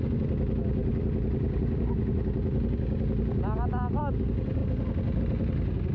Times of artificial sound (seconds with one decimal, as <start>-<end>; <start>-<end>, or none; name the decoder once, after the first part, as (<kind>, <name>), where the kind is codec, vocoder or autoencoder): none